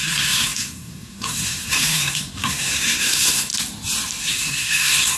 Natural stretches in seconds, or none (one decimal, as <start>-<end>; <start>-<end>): 3.5-4.3